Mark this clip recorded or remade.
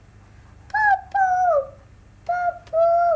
recorded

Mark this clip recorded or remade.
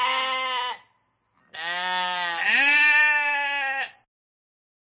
recorded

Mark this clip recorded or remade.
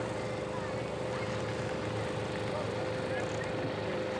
recorded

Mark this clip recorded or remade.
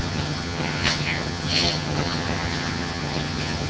remade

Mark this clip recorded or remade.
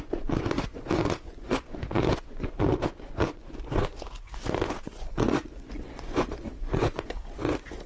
remade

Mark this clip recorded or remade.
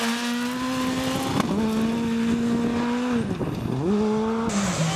recorded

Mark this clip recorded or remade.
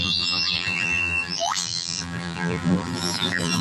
remade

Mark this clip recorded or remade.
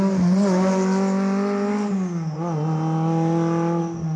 recorded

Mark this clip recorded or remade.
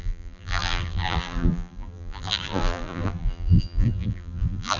remade